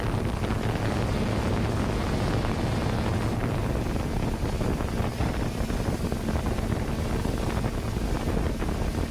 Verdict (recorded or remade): recorded